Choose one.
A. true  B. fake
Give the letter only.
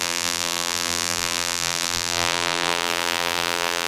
B